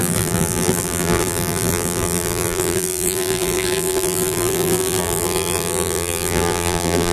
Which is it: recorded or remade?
remade